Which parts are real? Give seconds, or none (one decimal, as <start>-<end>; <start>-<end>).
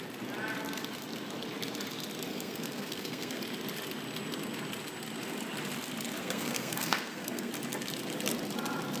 0.0-2.3; 3.4-6.2; 7.5-9.0